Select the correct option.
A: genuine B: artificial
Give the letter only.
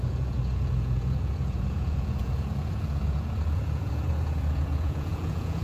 B